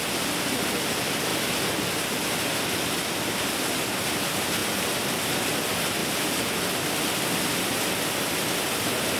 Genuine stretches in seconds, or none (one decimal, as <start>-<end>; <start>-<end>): 0.0-9.2